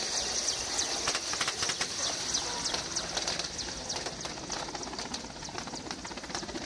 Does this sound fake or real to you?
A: real